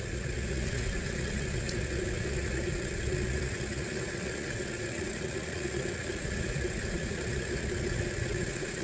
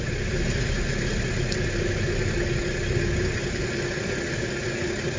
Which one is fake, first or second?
first